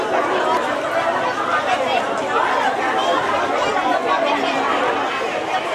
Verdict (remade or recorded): recorded